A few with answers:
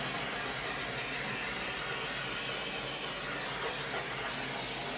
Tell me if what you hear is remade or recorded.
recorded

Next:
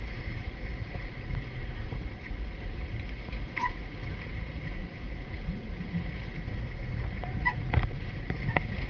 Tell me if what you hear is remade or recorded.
remade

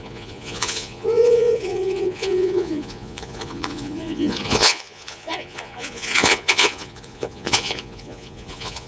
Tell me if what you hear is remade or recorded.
remade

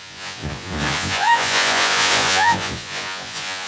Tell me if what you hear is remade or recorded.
remade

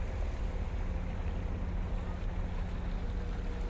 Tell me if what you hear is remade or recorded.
recorded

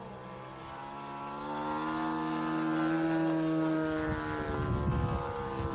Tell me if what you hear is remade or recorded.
recorded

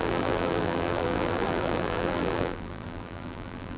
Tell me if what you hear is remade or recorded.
remade